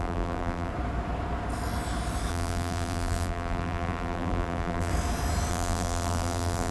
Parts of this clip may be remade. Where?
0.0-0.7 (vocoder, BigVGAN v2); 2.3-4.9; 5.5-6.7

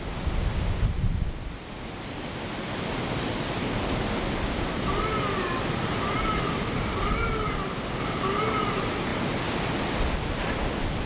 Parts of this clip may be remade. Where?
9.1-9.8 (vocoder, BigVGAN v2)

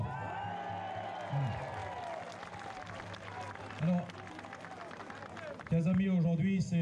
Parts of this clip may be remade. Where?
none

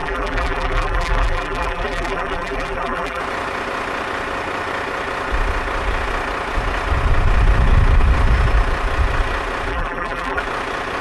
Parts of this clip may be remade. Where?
0.0-3.2 (vocoder, BigVGAN v2); 9.7-10.4

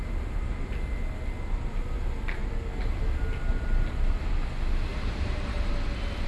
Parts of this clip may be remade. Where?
4.9-5.7 (vocoder, BigVGAN v2)